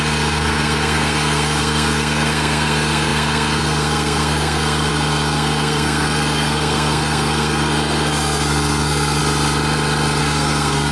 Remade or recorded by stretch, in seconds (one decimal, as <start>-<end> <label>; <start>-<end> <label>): 0.0-9.2 remade; 9.2-10.2 recorded; 10.2-10.9 remade